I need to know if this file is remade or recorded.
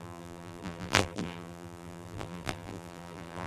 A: remade